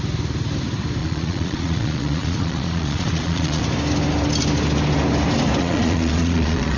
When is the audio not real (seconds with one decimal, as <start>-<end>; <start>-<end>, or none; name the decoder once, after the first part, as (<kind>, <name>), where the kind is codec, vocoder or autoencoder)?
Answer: 1.0-3.6 (vocoder, Vocos); 5.6-6.8